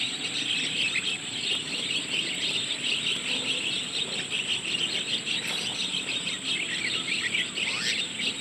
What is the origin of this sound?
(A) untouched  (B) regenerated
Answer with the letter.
A